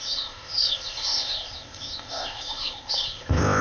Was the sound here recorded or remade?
remade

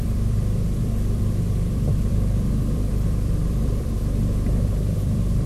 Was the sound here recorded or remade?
remade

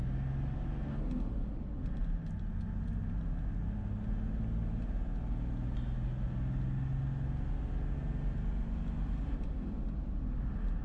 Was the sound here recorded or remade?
recorded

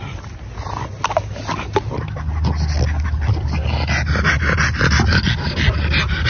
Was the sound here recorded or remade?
recorded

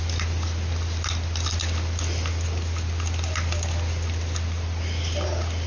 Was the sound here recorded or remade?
recorded